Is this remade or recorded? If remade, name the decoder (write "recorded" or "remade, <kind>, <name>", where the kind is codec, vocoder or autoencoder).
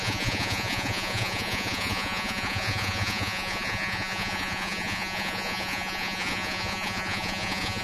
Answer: remade, vocoder, Vocos